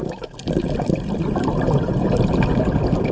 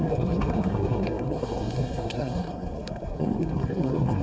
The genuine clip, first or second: first